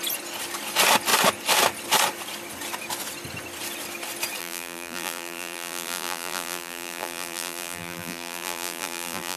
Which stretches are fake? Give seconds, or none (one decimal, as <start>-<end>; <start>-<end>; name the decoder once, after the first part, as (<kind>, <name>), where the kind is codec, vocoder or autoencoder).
4.4-9.4 (vocoder, BigVGAN v2)